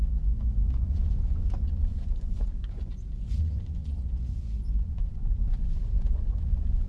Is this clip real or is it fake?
fake